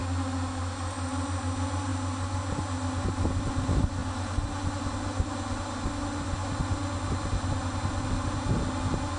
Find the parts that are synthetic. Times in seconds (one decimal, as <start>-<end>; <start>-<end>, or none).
none